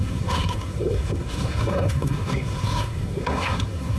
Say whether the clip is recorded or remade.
remade